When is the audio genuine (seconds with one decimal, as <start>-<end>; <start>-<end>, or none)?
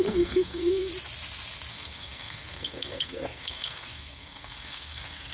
0.9-1.7